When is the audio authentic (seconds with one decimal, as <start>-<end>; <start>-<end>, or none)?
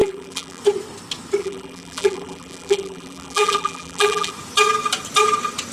0.6-1.4; 4.3-5.7